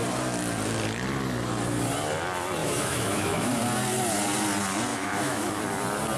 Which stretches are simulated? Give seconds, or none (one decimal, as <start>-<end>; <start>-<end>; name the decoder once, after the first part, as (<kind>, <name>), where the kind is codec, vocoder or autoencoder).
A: 2.6-3.6 (autoencoder, DAC-VAE); 4.9-5.6